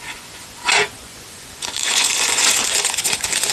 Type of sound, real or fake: fake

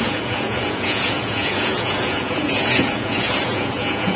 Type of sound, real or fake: fake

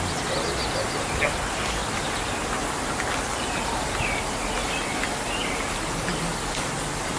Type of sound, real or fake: real